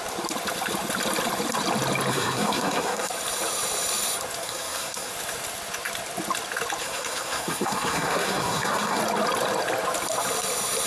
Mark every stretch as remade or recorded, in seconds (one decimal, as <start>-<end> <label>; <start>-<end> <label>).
0.0-2.1 recorded; 2.1-3.1 remade; 3.1-4.4 recorded; 4.4-5.1 remade; 5.1-6.8 recorded; 6.8-9.0 remade; 9.0-10.9 recorded